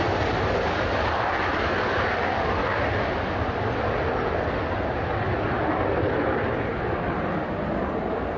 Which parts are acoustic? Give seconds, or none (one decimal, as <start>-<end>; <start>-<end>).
0.0-8.4